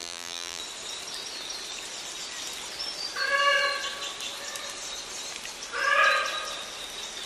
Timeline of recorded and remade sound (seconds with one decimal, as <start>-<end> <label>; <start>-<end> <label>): 0.0-0.6 remade; 0.6-7.3 recorded